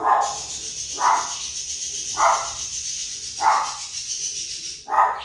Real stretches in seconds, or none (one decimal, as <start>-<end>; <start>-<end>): 0.0-2.7